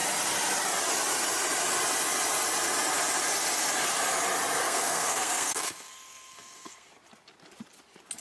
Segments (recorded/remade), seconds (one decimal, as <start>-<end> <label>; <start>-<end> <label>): 0.0-4.6 recorded; 4.6-6.9 remade; 6.9-8.2 recorded